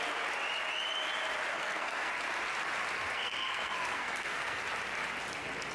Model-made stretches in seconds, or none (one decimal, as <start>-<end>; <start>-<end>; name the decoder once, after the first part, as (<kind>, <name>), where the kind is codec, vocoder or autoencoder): 1.5-2.1 (codec, SNAC); 3.1-4.6